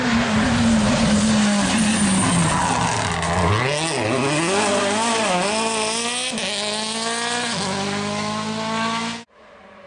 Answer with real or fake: real